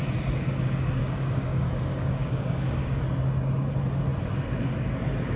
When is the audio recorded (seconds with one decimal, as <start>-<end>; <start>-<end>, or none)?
0.0-1.0; 3.0-5.4